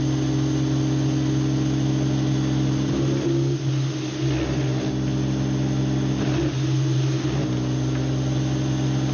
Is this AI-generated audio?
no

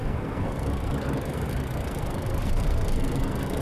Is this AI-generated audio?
yes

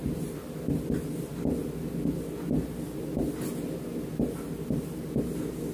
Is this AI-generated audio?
no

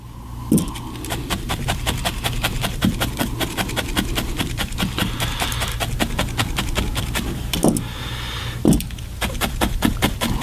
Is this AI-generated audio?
no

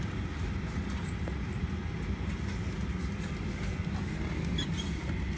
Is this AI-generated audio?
no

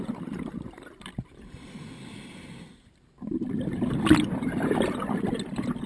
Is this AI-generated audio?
yes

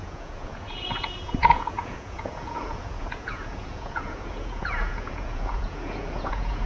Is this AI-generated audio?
yes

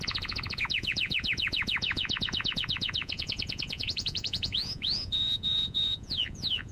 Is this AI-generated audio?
yes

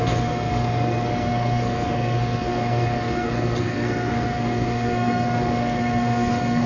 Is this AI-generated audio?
yes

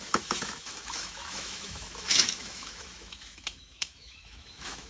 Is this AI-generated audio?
yes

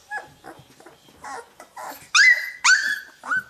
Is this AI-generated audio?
no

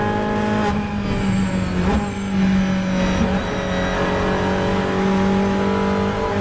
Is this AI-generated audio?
no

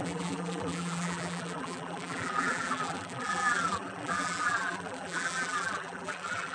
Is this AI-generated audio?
yes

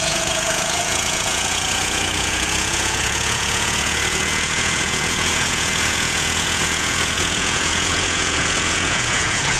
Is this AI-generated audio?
yes